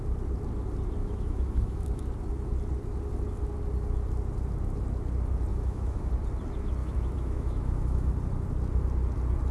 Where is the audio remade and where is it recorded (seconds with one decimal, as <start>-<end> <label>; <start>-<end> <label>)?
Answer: 0.0-1.0 recorded; 1.0-2.0 remade; 2.0-5.5 recorded; 5.5-6.1 remade; 6.1-6.8 recorded; 6.8-8.1 remade; 8.1-9.5 recorded